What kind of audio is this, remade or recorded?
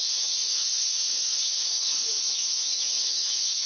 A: remade